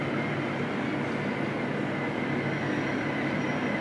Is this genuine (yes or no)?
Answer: yes